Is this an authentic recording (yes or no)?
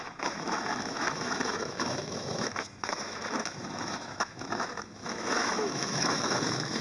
no